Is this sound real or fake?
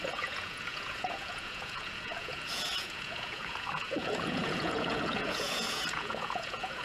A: fake